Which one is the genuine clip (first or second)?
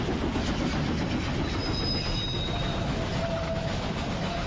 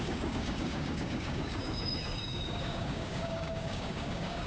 first